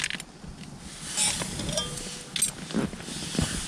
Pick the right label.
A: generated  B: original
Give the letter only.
B